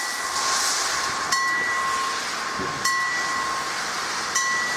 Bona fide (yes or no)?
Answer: yes